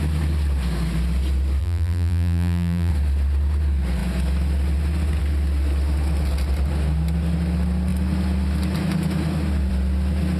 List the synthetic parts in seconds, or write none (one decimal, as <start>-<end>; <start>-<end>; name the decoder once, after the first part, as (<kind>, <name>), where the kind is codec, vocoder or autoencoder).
1.6-2.9 (vocoder, BigVGAN v2)